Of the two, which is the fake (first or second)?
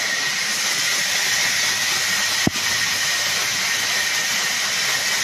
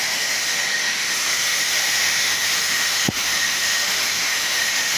second